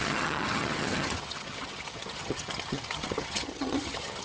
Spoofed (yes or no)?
yes